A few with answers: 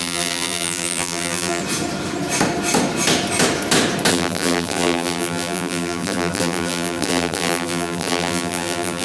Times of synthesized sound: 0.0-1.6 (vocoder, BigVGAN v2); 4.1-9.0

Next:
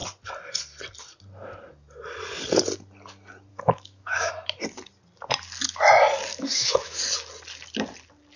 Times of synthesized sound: 3.5-4.3 (autoencoder, DAC-VAE); 6.3-7.0

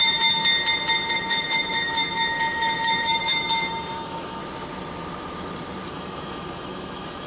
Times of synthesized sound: 0.0-0.4 (autoencoder, DAC-VAE); 1.1-4.4; 5.9-7.3

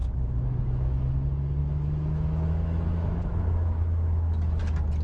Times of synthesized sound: 0.0-1.1 (autoencoder, DAC-VAE); 1.6-4.6

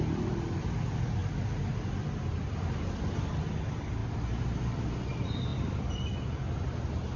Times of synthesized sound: none

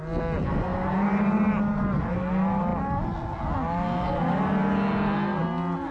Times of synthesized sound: 0.7-2.0 (vocoder, BigVGAN v2)

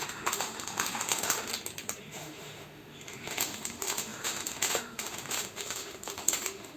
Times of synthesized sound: 0.0-1.5 (autoencoder, DAC-VAE); 2.0-6.8